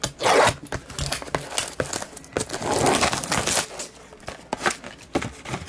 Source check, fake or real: real